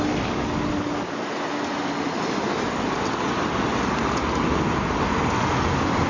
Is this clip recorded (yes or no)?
yes